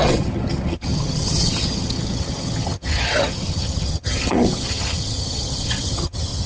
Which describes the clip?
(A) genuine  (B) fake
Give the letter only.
B